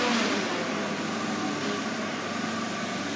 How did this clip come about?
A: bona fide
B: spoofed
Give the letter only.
A